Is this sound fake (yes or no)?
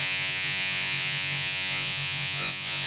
yes